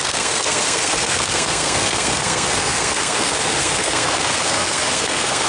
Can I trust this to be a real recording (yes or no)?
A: no